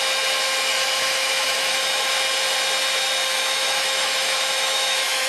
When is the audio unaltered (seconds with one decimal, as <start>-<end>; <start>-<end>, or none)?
0.0-0.7; 2.1-3.3

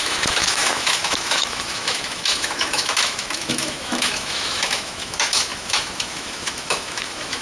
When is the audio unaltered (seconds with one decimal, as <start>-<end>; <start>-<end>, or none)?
none

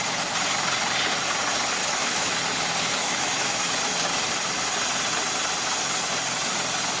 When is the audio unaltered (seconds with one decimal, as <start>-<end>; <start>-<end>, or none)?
0.0-1.8; 2.3-3.0; 3.8-7.0

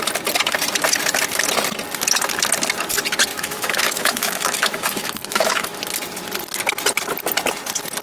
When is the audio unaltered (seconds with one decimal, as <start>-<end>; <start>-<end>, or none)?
0.0-3.3; 5.8-8.0

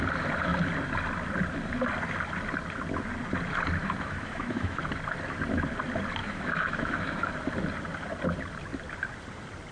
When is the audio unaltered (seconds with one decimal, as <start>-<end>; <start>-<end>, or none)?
0.0-3.8; 4.8-6.2; 7.3-9.7

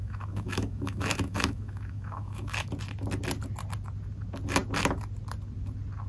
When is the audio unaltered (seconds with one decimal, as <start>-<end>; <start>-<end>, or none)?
2.7-6.1